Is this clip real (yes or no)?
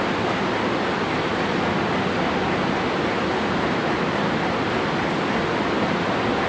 yes